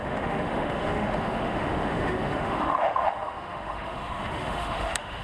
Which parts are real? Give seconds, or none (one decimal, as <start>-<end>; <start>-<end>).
none